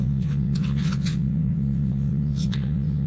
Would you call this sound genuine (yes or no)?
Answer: no